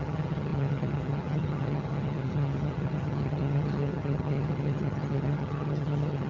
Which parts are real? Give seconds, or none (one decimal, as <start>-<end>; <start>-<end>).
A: none